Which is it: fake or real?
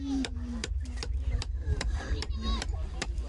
fake